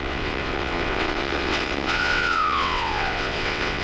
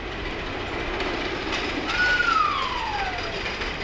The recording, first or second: second